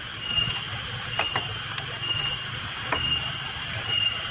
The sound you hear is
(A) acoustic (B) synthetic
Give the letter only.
A